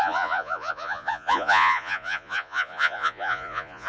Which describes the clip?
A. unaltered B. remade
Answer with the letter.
B